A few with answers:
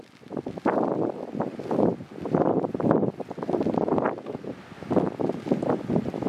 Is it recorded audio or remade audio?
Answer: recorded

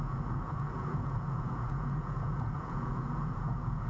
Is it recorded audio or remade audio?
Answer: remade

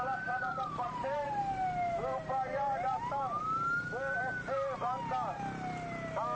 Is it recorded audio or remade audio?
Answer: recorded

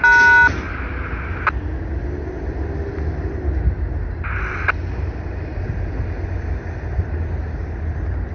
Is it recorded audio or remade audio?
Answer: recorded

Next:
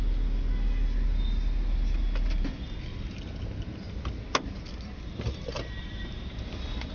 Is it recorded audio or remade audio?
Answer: recorded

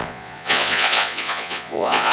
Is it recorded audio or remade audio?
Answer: remade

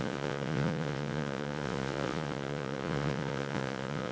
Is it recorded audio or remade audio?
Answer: remade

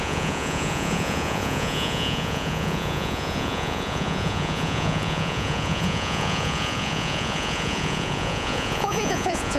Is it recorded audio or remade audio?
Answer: remade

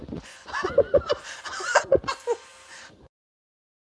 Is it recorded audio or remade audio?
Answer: remade